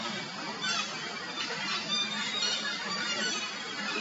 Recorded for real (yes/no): yes